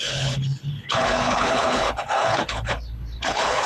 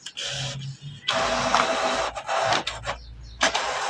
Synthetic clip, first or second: first